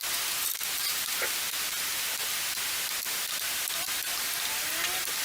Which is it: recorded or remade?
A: recorded